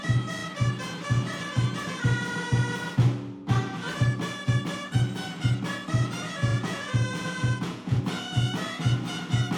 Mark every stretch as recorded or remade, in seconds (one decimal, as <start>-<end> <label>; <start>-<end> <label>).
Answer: 0.0-6.5 recorded; 6.5-8.0 remade; 8.0-9.6 recorded